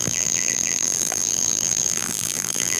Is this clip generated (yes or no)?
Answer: yes